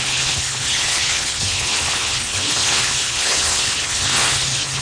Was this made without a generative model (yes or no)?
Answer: no